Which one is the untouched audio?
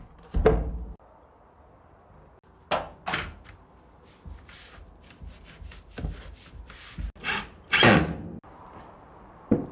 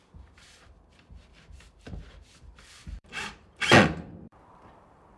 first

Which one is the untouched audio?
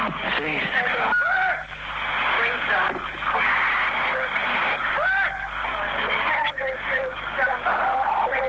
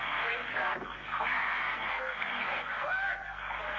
first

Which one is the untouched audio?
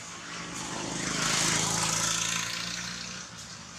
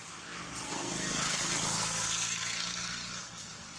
first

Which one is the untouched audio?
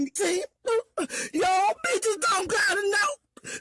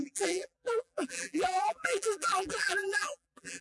first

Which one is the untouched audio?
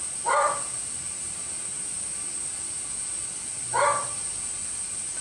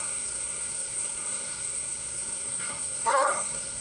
first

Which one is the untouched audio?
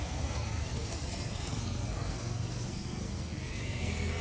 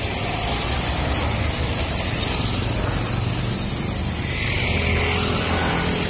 second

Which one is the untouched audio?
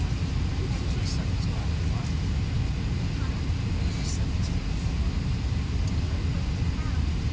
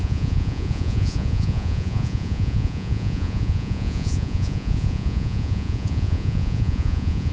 first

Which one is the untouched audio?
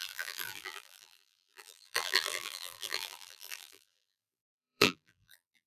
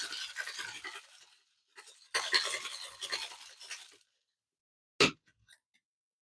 second